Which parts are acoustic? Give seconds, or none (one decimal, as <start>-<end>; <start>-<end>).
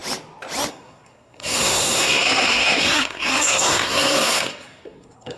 0.0-0.7